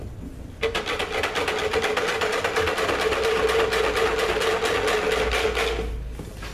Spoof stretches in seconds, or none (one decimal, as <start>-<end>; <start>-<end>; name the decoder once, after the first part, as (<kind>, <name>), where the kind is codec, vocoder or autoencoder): none